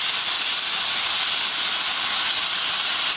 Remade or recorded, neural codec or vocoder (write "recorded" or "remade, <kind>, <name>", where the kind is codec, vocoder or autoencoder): recorded